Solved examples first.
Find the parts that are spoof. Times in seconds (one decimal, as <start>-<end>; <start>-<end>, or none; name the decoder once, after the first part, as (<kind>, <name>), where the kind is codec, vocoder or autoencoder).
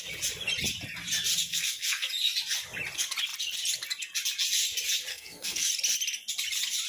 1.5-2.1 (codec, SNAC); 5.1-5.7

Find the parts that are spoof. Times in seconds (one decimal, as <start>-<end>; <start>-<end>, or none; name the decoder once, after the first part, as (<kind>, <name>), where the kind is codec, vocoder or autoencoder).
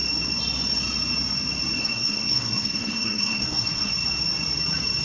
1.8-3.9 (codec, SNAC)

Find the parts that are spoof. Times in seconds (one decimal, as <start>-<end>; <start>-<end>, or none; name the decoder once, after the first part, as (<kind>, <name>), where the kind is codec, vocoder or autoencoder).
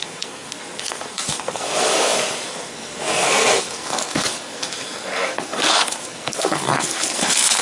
0.0-7.6 (codec, SNAC)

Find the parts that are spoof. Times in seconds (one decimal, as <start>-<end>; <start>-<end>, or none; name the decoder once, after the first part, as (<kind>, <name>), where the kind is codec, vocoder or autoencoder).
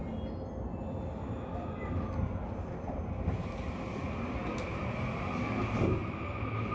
none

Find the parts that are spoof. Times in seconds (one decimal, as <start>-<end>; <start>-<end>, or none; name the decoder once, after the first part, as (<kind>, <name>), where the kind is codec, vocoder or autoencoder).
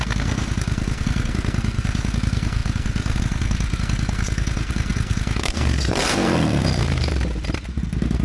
0.0-7.1 (codec, SNAC); 7.7-8.2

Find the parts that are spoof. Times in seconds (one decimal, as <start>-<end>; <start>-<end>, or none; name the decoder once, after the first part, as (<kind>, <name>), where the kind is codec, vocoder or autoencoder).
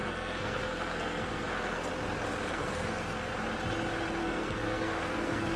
0.0-1.9 (codec, SNAC); 2.5-3.3; 4.2-5.6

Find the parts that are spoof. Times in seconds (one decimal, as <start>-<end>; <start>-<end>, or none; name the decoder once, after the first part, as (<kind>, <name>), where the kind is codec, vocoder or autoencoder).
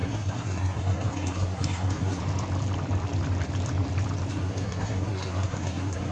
0.0-2.2 (codec, SNAC); 4.3-6.1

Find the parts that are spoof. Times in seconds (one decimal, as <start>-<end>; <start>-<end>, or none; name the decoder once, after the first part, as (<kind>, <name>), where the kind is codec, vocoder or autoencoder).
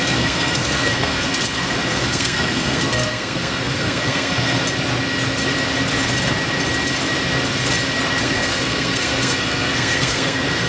0.0-4.6 (codec, SNAC); 8.2-10.7